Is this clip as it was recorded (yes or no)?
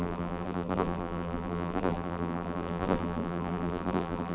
no